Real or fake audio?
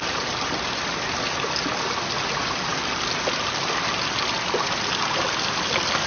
real